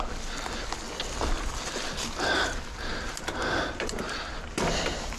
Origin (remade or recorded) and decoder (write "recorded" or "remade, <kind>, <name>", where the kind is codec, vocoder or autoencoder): recorded